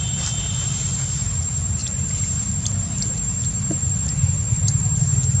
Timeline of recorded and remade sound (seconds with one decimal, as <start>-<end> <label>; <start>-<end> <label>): 0.0-5.4 recorded